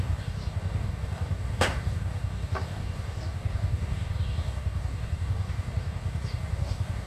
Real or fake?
fake